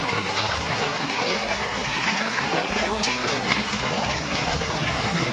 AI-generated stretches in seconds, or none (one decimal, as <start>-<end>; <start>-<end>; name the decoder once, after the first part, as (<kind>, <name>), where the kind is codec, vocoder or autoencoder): 0.0-5.3 (codec, SNAC)